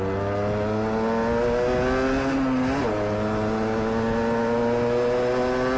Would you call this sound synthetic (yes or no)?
no